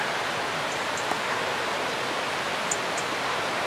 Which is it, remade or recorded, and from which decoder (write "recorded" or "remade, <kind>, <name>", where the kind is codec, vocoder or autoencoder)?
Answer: recorded